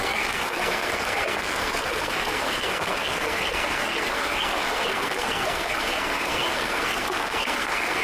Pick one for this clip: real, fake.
fake